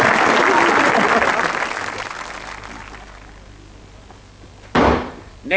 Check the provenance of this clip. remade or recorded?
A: recorded